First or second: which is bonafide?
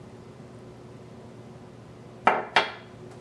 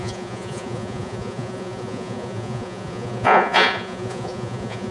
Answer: first